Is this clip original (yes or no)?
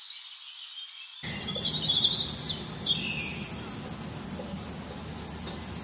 yes